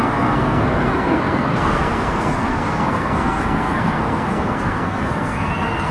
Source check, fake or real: fake